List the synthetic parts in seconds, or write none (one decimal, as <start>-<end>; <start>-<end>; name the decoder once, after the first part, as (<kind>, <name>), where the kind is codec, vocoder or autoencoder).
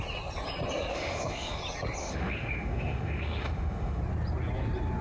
0.9-1.6 (autoencoder, DAC-VAE); 2.0-4.0